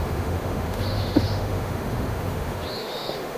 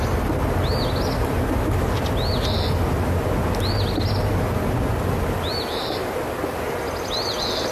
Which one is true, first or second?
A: second